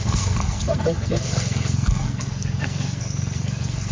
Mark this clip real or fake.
fake